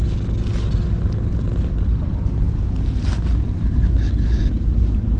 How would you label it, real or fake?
real